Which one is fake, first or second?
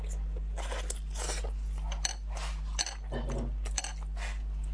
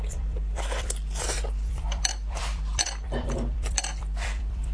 second